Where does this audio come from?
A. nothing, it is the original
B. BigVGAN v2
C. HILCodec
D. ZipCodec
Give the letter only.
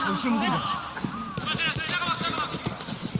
A